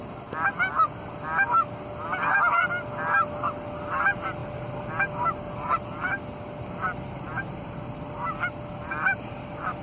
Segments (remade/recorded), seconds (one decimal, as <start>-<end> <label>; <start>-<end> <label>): 0.0-9.8 recorded